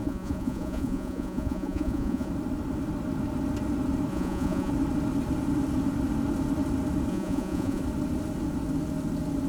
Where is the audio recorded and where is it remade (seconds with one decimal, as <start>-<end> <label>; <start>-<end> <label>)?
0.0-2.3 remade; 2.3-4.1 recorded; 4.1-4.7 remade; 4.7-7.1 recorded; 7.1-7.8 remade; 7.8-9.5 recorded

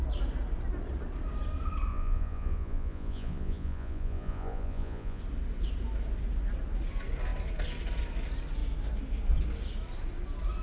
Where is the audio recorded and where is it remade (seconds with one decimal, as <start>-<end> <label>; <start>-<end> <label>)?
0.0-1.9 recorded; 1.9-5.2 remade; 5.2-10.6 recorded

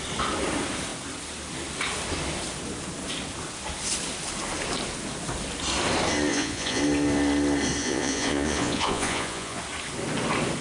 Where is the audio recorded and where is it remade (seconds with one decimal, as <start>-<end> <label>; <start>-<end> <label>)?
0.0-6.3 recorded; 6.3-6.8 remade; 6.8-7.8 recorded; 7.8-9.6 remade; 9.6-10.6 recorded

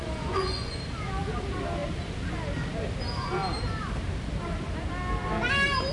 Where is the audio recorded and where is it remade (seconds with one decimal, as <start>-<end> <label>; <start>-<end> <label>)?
0.0-0.8 remade; 0.8-5.9 recorded

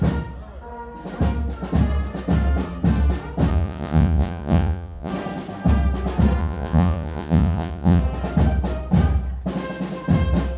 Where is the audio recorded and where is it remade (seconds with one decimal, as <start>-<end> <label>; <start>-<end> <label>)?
0.0-3.5 recorded; 3.5-5.1 remade; 5.1-6.4 recorded; 6.4-8.0 remade; 8.0-10.6 recorded

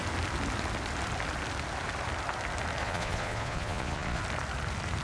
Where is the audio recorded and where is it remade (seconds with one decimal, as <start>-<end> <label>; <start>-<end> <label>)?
0.0-2.8 recorded; 2.8-4.2 remade; 4.2-5.0 recorded